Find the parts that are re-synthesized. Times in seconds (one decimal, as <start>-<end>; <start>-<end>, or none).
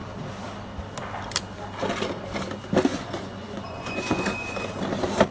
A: 2.9-4.6